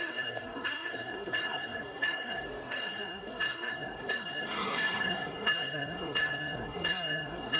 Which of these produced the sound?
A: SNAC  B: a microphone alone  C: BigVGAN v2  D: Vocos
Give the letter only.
A